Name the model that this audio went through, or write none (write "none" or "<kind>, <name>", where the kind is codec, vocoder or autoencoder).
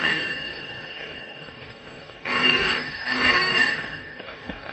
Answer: codec, DAC